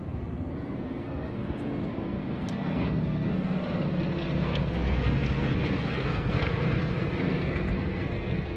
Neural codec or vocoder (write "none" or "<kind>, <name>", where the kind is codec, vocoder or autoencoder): codec, SNAC